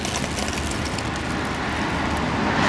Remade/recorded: recorded